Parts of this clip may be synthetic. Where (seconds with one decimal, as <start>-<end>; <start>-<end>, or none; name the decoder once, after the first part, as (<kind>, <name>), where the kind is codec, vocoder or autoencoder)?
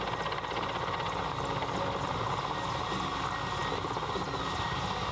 none